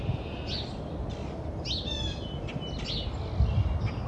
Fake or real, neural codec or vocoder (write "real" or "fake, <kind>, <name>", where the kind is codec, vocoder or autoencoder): real